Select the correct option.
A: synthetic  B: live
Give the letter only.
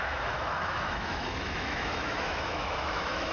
A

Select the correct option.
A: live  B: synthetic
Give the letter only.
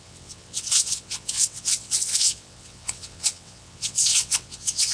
B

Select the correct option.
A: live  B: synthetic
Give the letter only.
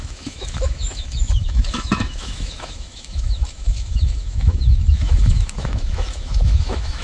B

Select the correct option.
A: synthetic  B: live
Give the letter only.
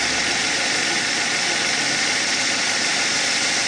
B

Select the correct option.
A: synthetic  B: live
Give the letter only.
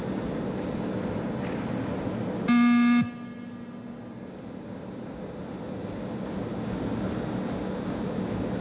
B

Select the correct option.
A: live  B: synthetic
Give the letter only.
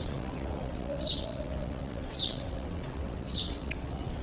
B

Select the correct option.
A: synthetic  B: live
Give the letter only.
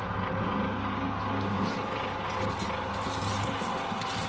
B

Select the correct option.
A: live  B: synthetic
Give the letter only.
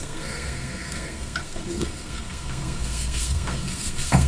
B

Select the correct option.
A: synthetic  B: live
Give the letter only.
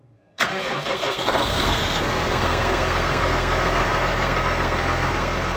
A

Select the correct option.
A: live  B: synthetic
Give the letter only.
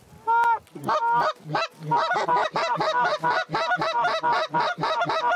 A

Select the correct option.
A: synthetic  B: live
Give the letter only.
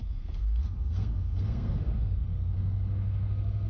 A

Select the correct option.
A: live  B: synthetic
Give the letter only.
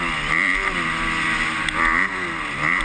A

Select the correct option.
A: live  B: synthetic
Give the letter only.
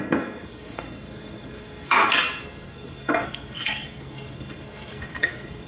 B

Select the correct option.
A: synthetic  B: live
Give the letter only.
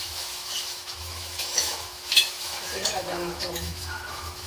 A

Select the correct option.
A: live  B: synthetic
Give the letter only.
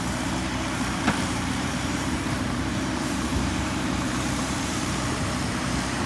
B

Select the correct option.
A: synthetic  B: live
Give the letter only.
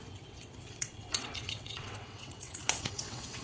A